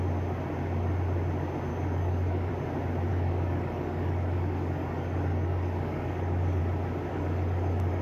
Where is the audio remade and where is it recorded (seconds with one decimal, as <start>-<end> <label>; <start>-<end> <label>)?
0.0-1.7 recorded; 1.7-2.5 remade; 2.5-3.1 recorded; 3.1-6.6 remade; 6.6-7.1 recorded; 7.1-8.0 remade